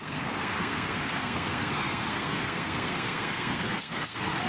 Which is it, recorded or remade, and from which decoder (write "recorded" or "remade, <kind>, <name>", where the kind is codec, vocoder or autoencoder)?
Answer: remade, codec, SNAC